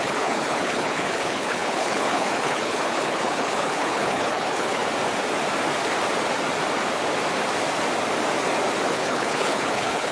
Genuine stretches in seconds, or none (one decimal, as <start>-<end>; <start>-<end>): 4.8-8.9